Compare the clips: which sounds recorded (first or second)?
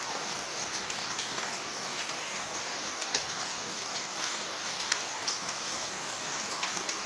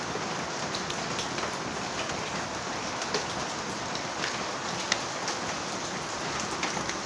second